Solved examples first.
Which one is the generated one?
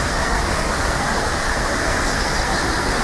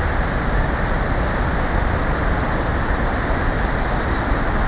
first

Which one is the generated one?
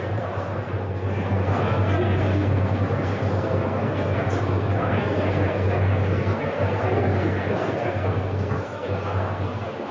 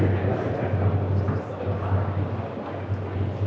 first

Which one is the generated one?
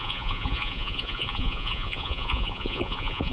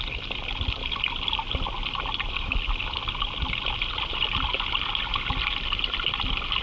first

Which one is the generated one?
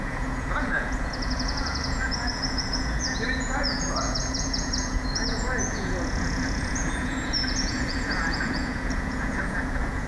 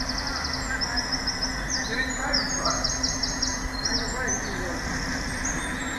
first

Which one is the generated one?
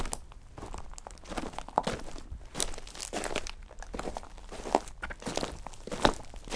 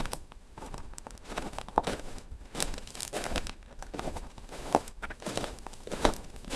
second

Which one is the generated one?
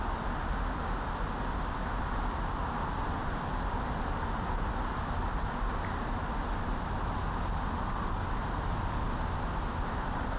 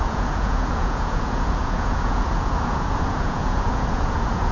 second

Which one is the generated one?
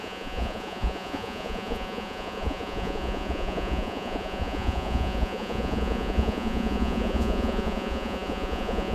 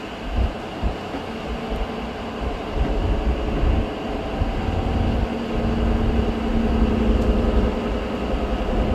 first